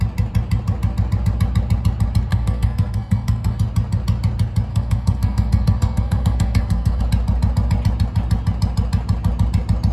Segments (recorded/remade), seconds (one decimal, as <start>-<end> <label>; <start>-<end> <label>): 0.0-2.3 recorded; 2.3-3.6 remade; 3.6-4.7 recorded; 4.7-7.0 remade; 7.0-9.9 recorded